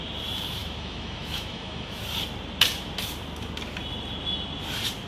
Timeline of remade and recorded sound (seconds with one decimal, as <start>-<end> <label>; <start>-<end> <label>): 0.0-0.6 recorded; 0.6-2.0 remade; 2.0-5.1 recorded